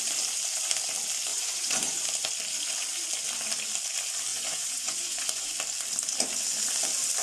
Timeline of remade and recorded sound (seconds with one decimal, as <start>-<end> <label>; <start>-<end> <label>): 0.0-1.3 recorded; 1.3-2.0 remade; 2.0-4.3 recorded; 4.3-5.5 remade; 5.5-7.2 recorded